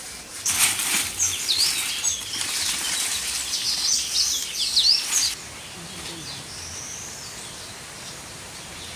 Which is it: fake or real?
real